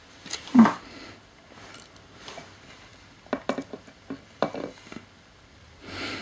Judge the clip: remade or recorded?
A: recorded